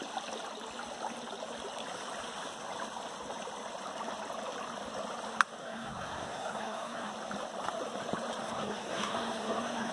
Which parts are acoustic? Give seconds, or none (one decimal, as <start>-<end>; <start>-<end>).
0.0-5.6; 7.1-8.4